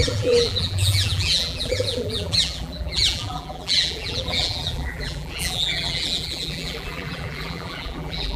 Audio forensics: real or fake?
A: fake